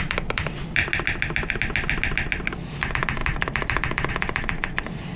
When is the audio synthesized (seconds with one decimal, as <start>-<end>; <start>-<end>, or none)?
none